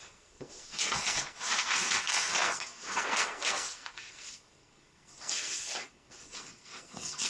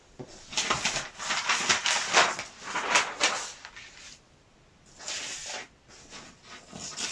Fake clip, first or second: first